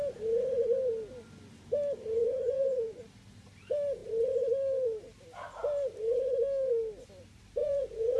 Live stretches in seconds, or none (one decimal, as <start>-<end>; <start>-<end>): 0.0-2.2; 3.0-7.6